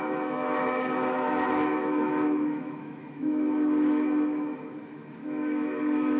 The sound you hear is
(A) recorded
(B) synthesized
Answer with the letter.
B